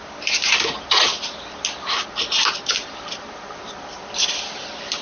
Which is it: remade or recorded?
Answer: recorded